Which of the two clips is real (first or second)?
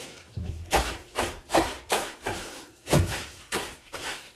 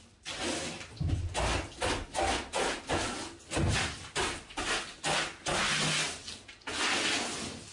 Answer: second